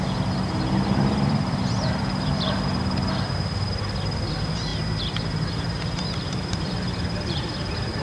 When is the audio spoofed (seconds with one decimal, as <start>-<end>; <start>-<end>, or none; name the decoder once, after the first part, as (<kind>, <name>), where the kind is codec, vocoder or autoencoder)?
0.0-4.7 (vocoder, BigVGAN v2); 6.0-8.0